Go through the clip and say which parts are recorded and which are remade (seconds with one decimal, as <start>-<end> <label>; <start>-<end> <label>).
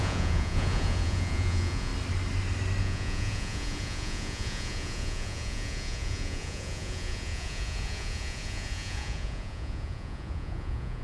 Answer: 0.0-1.9 remade; 1.9-2.8 recorded; 2.8-11.0 remade